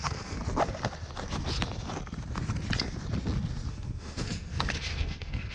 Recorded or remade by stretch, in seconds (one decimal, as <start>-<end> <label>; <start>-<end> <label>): 0.0-0.4 remade; 0.4-3.7 recorded; 3.7-5.5 remade